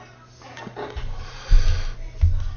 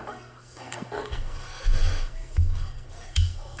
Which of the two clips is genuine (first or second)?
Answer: first